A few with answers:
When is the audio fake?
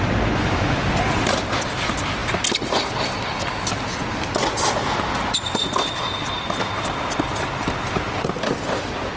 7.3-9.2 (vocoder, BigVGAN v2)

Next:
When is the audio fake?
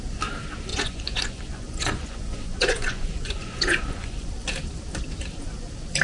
0.7-4.3 (vocoder, Vocos)